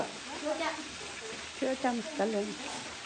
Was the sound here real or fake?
real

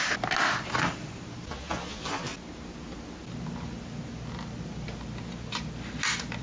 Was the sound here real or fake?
real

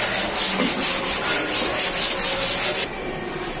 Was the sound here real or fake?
real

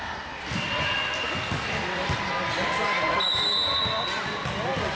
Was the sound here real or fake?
real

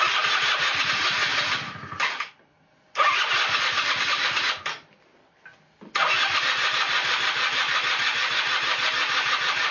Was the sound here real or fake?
real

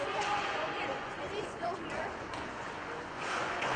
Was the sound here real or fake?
fake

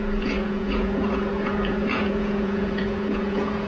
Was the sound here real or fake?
fake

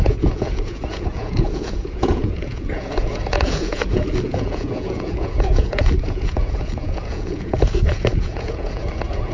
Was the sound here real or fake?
fake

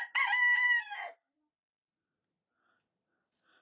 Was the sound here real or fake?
real